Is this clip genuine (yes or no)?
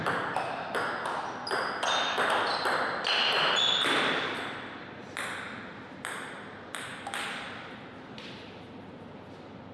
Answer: yes